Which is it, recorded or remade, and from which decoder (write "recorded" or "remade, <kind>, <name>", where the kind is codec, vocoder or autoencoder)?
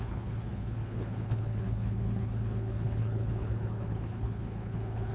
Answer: remade, codec, HILCodec